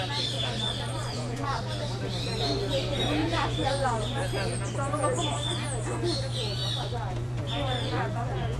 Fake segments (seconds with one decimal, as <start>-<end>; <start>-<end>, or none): 1.0-1.6; 3.2-3.7; 6.6-8.6

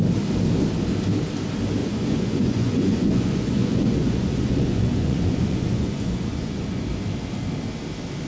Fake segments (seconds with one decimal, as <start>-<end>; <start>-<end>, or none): 1.8-6.8